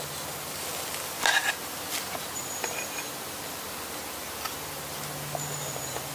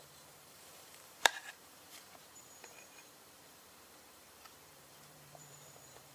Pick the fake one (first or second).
second